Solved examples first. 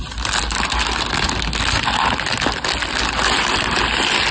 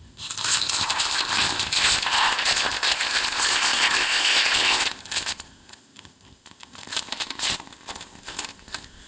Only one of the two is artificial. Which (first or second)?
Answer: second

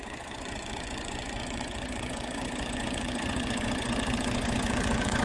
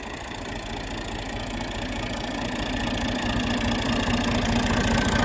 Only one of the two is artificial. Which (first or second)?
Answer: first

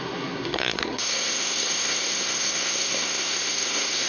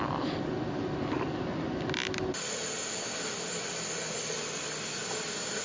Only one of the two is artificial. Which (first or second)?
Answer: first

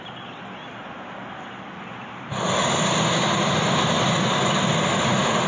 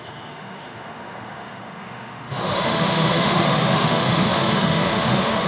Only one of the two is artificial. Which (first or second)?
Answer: second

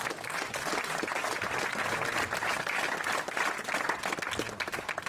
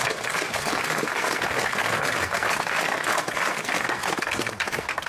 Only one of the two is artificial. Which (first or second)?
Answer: second